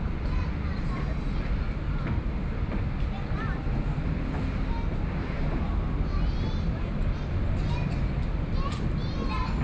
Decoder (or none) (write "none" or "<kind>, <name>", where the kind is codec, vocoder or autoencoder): none